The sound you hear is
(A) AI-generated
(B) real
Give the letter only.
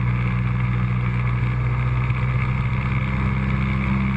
B